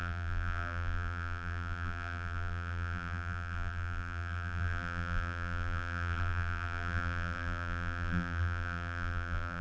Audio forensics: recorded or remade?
remade